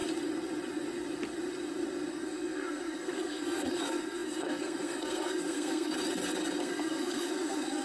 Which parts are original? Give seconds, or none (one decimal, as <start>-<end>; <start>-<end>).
0.0-2.1; 5.9-6.6